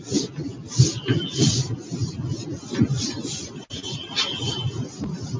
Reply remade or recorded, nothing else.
recorded